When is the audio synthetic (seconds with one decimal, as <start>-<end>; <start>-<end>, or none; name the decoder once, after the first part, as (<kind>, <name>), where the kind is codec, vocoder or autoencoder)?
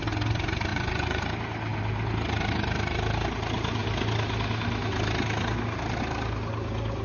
0.7-1.2 (vocoder, Vocos)